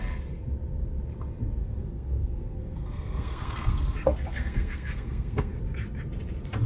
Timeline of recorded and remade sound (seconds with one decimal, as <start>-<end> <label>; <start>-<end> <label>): 0.0-1.6 recorded; 1.6-5.6 remade; 5.6-6.7 recorded